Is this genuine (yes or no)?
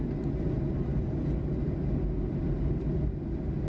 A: yes